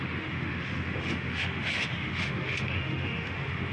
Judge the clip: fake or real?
fake